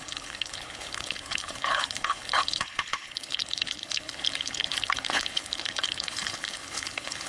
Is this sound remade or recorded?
remade